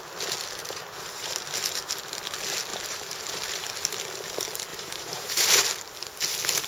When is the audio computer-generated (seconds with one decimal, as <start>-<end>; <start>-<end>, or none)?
0.6-1.4; 2.7-3.3; 4.7-5.6